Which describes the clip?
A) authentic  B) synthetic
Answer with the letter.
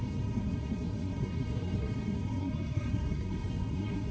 B